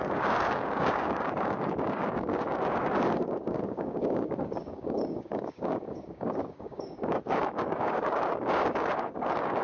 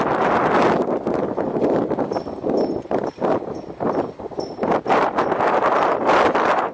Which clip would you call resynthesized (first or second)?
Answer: first